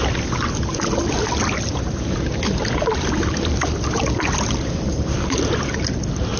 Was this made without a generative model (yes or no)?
yes